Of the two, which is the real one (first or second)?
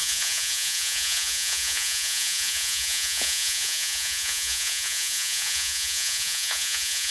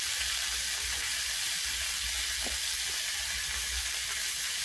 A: second